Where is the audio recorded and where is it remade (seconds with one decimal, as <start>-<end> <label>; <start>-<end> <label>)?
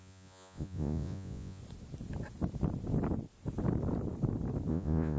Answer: 0.0-1.6 remade; 1.6-4.7 recorded; 4.7-5.2 remade